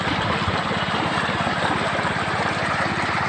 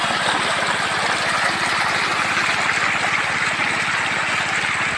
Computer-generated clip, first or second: first